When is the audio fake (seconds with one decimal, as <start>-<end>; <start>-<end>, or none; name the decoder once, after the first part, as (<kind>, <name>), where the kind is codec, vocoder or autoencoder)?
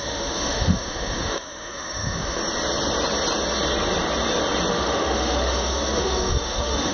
0.0-2.4 (autoencoder, DAC-VAE); 4.7-6.9